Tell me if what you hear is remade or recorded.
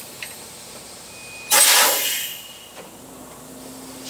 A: recorded